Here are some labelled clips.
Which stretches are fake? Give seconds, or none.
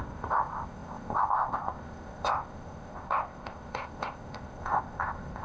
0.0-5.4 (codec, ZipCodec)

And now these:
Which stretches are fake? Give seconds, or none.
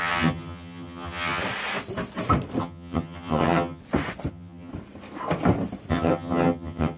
0.0-1.4 (vocoder, HiFi-GAN); 2.6-3.8; 4.3-4.7; 5.9-7.0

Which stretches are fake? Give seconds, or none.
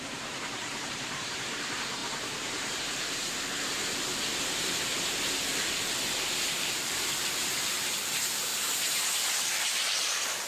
0.0-8.5 (vocoder, BigVGAN v2); 9.4-10.5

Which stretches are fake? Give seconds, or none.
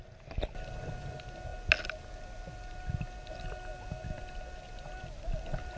none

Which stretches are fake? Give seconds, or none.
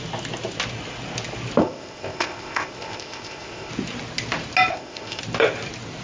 1.6-3.7 (codec, ZipCodec); 4.7-5.2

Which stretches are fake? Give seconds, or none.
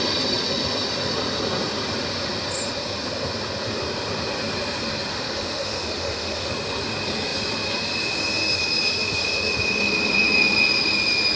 5.1-6.5 (autoencoder, DAC-VAE)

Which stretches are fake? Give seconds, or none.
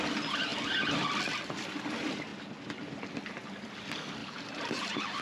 4.2-5.2 (vocoder, BigVGAN v2)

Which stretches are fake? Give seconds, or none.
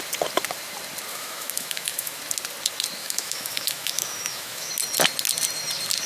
1.1-2.2 (autoencoder, DAC-VAE); 3.0-4.7